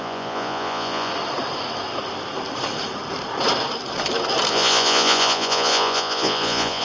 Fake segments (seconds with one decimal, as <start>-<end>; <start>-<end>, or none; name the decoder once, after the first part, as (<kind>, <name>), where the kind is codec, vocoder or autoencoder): 0.0-1.1 (vocoder, Vocos); 4.5-6.8